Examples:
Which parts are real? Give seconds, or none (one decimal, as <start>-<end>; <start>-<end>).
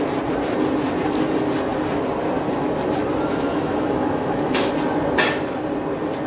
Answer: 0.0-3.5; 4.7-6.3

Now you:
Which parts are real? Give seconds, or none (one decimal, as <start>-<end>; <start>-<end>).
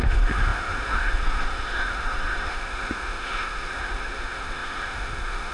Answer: none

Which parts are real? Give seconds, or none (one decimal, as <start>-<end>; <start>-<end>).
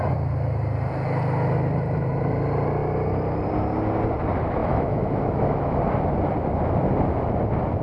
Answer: 0.0-4.6; 5.8-7.8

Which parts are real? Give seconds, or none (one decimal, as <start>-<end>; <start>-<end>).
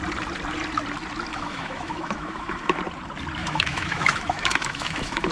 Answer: 0.0-1.3; 2.8-3.4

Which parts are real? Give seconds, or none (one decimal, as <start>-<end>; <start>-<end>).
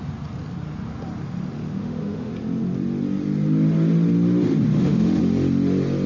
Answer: 0.0-1.8; 2.3-4.7; 5.2-6.1